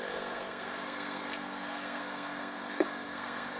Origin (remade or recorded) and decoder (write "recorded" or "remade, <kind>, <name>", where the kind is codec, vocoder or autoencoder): remade, codec, SNAC